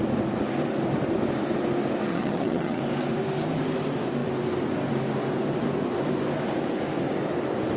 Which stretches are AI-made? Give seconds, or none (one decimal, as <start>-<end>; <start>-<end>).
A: 2.1-2.8